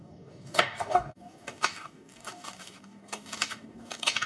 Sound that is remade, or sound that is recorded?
remade